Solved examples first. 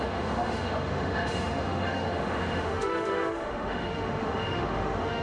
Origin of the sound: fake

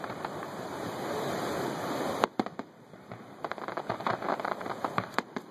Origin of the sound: fake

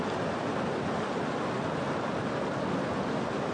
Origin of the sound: real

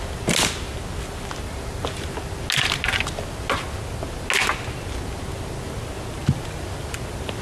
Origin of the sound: real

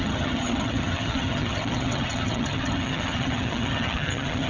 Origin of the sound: fake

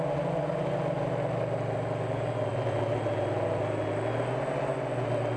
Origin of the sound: real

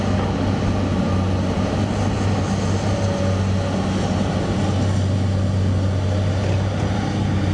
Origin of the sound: real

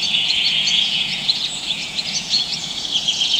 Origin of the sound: fake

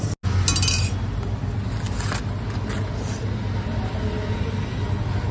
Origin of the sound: real